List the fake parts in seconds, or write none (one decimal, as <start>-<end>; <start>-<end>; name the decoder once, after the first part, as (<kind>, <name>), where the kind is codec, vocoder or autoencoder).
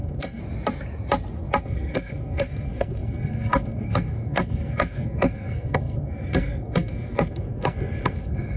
0.0-0.4 (codec, SNAC); 1.6-8.6